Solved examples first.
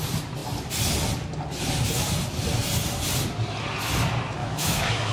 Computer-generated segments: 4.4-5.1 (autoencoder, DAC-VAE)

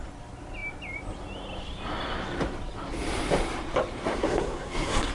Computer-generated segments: 4.0-5.1 (codec, SNAC)

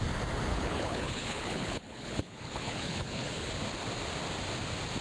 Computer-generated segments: 0.5-3.5 (codec, HILCodec)

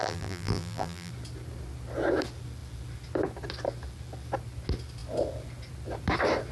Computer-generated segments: 0.0-1.1 (vocoder, BigVGAN v2)

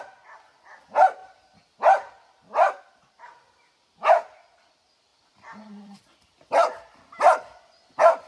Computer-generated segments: 5.1-7.6 (vocoder, BigVGAN v2)

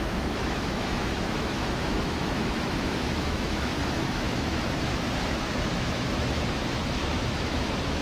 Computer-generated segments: 0.0-8.0 (autoencoder, DAC-VAE)

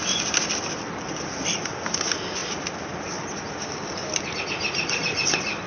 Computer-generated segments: none